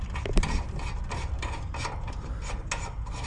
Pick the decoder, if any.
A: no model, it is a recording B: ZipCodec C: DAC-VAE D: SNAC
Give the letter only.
A